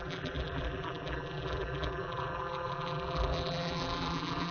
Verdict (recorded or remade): remade